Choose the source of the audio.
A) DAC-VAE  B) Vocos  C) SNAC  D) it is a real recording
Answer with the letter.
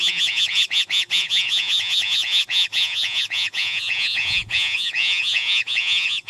B